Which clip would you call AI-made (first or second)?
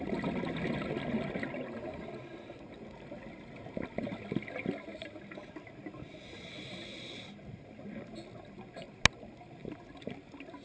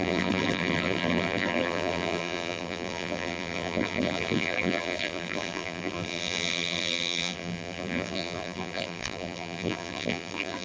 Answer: second